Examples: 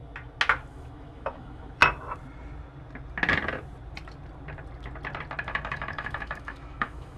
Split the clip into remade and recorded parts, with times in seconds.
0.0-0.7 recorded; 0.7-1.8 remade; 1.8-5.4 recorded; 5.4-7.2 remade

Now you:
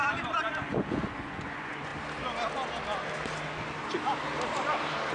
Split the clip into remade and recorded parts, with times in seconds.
0.0-0.6 recorded; 0.6-1.9 remade; 1.9-5.1 recorded